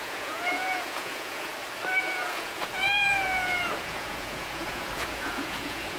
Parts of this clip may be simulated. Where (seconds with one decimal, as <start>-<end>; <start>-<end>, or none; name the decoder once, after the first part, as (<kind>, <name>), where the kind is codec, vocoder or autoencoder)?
0.0-1.5 (vocoder, Vocos); 2.0-6.0